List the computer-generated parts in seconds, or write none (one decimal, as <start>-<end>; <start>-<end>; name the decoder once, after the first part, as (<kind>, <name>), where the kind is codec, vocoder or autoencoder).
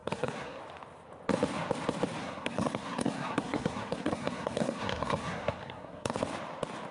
0.0-0.6 (codec, SNAC); 2.2-6.2